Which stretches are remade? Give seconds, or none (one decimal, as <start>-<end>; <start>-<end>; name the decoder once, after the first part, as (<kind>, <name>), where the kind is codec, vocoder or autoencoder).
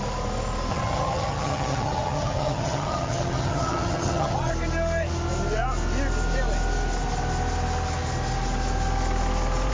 0.7-4.5 (vocoder, HiFi-GAN)